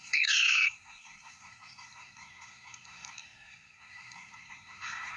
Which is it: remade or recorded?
remade